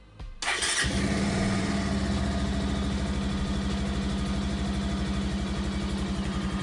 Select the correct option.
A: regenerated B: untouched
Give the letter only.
B